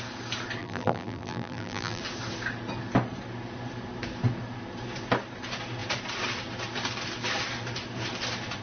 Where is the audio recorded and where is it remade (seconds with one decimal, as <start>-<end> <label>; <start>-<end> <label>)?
0.0-0.6 recorded; 0.6-2.0 remade; 2.0-8.6 recorded